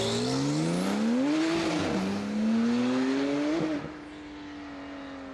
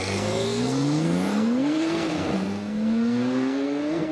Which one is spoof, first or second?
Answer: second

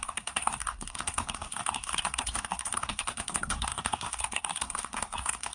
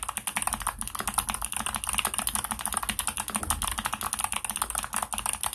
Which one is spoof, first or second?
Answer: first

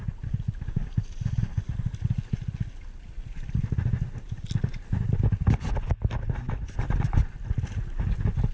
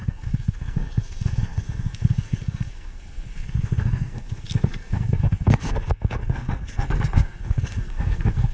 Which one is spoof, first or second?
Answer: second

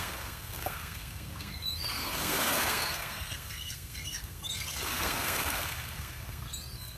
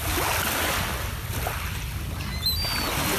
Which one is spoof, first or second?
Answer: first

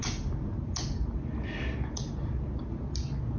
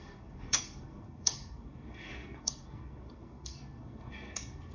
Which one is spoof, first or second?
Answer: second